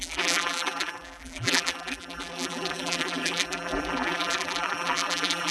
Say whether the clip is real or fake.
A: fake